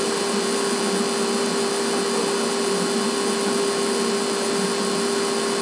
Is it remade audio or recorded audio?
recorded